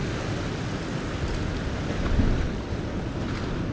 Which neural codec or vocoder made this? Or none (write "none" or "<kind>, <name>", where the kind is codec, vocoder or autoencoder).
none